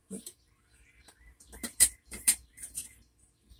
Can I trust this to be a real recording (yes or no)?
no